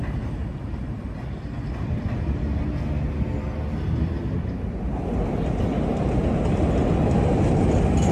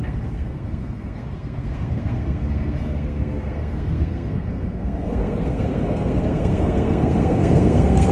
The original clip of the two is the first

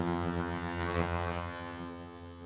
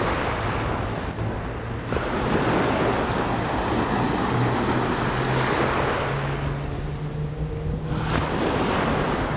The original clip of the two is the second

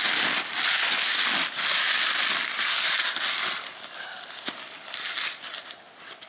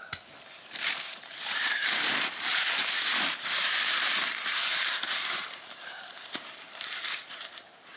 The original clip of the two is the first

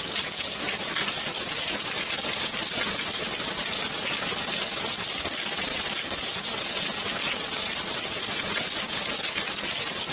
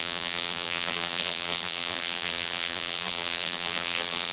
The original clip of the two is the first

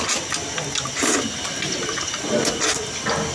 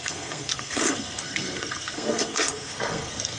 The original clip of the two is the first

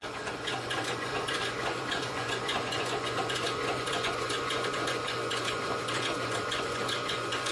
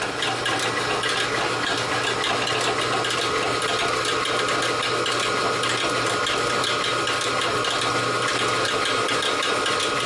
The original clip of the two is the second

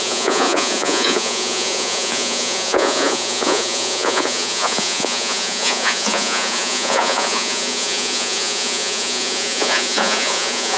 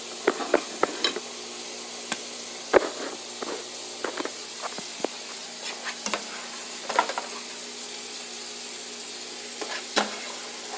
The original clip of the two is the second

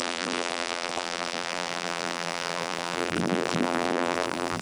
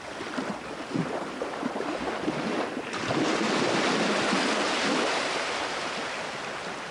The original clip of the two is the second